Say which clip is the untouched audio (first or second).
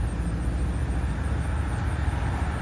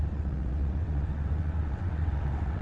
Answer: first